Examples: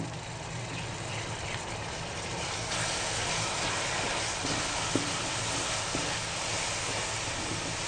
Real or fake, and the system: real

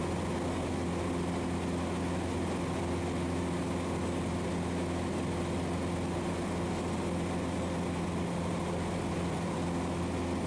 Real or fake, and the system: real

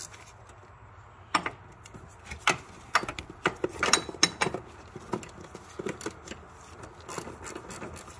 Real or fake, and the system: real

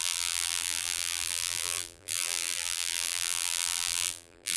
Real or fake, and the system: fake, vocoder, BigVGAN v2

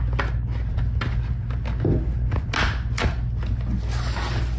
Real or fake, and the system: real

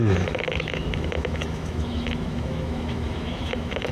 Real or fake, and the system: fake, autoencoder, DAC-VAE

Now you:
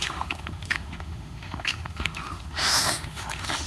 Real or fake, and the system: fake, autoencoder, DAC-VAE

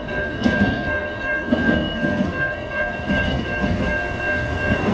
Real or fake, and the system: fake, codec, SNAC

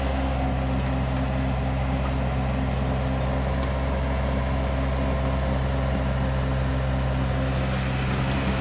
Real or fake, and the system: real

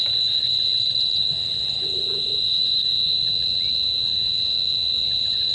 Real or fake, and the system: fake, vocoder, BigVGAN v2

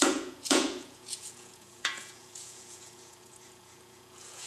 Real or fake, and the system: fake, vocoder, Vocos